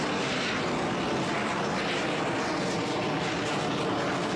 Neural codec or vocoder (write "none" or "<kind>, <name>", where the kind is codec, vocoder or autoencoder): none